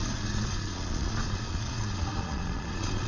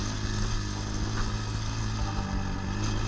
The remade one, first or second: first